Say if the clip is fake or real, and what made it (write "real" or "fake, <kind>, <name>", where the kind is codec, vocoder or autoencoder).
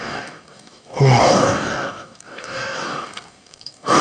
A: fake, codec, DAC